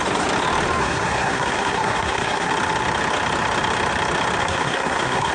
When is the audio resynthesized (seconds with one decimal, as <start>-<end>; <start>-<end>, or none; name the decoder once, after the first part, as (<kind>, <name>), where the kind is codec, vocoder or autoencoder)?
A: 0.8-2.5 (codec, SNAC); 4.4-5.3